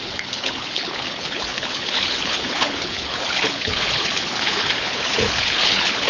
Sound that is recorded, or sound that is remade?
remade